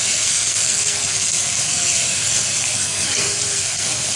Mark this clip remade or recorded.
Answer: remade